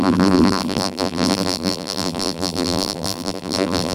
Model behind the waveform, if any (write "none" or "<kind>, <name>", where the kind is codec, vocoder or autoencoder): vocoder, BigVGAN v2